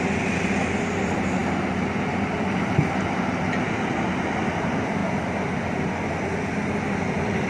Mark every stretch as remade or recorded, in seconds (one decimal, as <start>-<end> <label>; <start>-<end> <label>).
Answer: 0.0-7.5 recorded